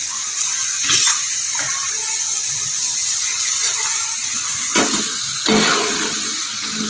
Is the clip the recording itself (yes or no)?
yes